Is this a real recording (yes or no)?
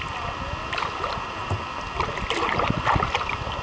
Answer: yes